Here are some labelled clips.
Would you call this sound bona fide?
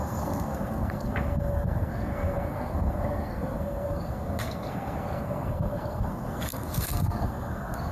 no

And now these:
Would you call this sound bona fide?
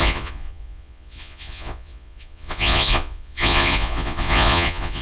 no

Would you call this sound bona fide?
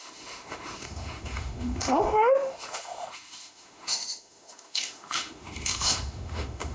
no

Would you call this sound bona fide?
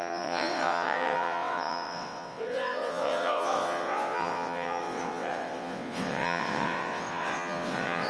no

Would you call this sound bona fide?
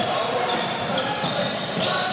yes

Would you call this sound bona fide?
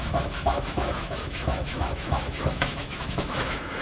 no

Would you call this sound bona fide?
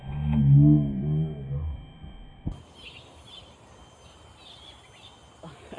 yes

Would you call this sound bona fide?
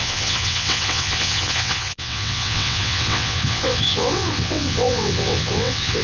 no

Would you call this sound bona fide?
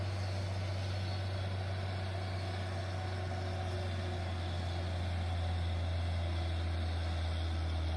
yes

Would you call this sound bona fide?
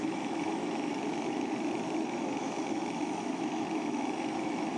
no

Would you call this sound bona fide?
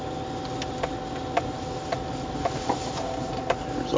yes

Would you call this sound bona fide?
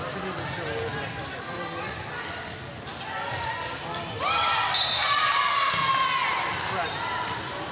yes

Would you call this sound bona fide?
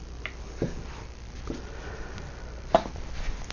yes